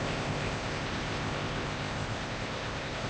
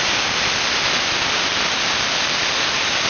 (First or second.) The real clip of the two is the second